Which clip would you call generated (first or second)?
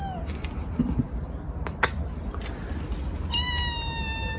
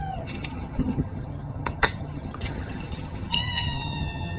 second